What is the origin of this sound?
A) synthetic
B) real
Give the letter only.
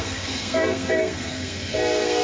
A